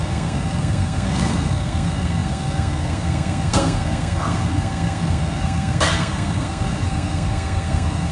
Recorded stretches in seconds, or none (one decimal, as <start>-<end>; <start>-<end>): none

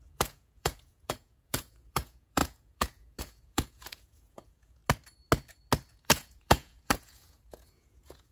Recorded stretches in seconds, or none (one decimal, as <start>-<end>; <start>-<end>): 4.8-5.9

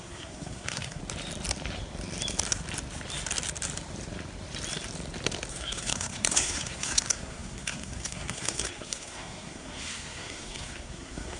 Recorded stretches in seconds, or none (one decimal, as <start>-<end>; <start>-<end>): 1.0-5.5